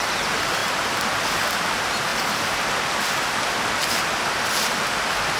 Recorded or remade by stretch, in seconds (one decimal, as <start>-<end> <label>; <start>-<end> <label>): 0.0-5.4 recorded